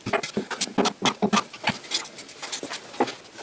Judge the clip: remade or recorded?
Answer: recorded